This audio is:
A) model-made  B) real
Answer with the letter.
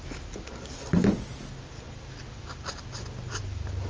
B